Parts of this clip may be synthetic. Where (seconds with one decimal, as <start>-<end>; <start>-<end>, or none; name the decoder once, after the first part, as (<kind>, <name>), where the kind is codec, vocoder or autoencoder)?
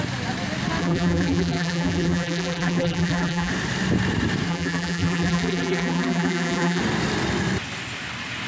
0.8-3.5 (vocoder, BigVGAN v2); 4.5-6.8